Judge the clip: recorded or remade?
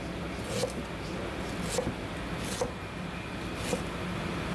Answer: recorded